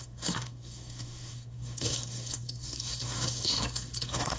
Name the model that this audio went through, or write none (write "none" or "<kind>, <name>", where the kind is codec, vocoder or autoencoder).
codec, SNAC